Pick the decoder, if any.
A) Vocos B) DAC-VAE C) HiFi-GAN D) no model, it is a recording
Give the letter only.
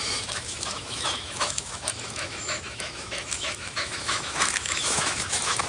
B